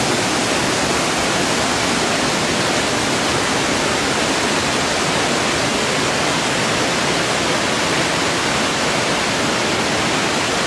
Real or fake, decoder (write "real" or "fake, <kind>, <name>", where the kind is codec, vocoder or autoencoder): real